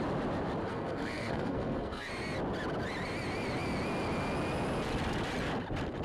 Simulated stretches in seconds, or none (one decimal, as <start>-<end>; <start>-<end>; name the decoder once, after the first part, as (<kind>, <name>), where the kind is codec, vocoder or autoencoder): 0.7-2.1 (codec, SNAC)